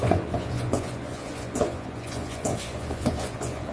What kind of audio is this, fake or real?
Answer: fake